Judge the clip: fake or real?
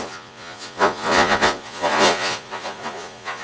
fake